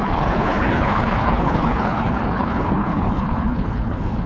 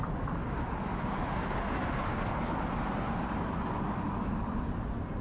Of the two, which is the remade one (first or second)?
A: first